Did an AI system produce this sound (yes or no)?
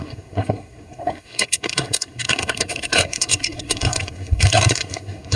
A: yes